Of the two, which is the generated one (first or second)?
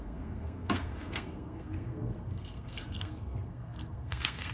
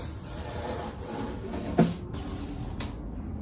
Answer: first